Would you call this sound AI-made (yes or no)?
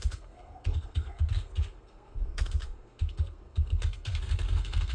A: yes